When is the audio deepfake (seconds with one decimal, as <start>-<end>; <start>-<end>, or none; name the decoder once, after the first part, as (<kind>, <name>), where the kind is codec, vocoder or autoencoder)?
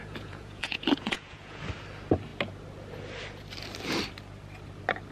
0.0-1.6 (vocoder, Vocos)